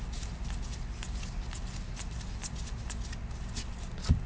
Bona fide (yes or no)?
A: yes